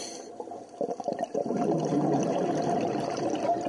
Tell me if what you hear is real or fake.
real